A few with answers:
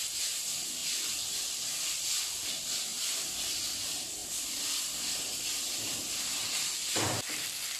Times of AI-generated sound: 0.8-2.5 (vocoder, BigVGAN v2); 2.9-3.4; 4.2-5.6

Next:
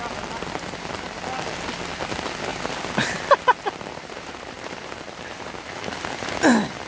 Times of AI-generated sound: 3.9-5.6 (vocoder, BigVGAN v2)

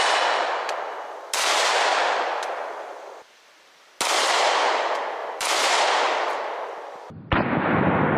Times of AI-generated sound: 1.9-4.0 (vocoder, BigVGAN v2); 5.2-5.8